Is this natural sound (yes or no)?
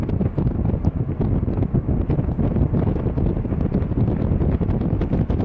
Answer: yes